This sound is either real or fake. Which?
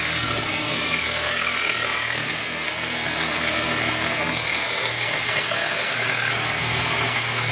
fake